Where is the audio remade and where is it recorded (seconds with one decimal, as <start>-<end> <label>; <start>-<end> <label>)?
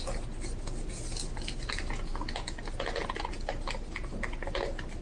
0.0-5.0 recorded